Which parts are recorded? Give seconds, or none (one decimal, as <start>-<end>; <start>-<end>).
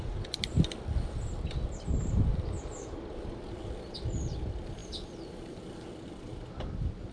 0.0-7.1